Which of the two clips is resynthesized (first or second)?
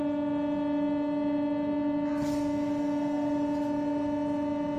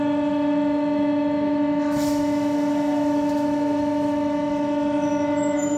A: second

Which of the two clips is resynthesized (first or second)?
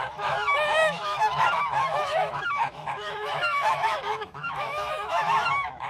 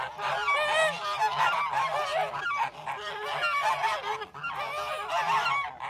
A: first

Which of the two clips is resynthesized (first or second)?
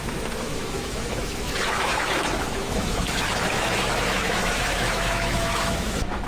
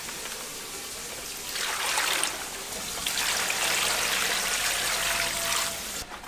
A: first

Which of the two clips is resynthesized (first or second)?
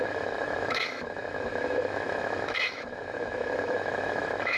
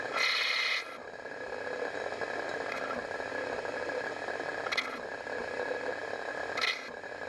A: first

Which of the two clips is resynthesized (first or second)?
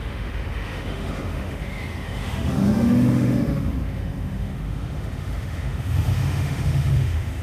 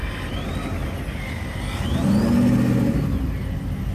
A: first